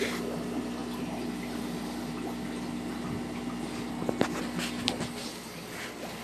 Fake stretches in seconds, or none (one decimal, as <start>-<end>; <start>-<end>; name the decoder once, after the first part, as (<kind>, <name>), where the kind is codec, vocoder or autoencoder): none